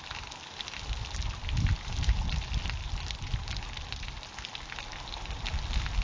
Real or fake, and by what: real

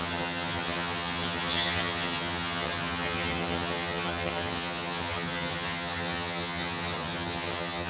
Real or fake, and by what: fake, vocoder, HiFi-GAN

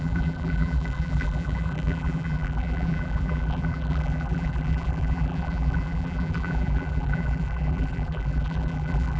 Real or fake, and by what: fake, vocoder, BigVGAN v2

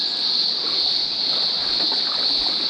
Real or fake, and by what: real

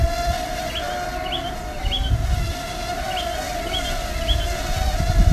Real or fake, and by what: real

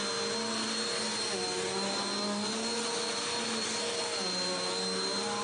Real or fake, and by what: real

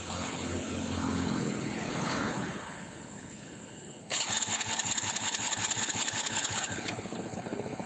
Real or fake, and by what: fake, codec, HILCodec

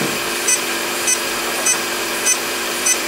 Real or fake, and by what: fake, vocoder, BigVGAN v2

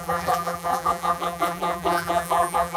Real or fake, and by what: fake, vocoder, BigVGAN v2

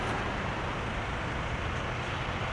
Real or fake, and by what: real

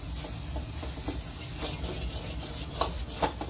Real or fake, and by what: real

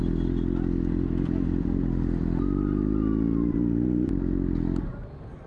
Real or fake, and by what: real